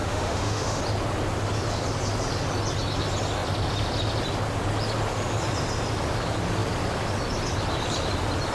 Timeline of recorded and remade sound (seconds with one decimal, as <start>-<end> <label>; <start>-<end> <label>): 0.0-0.8 remade; 0.8-8.5 recorded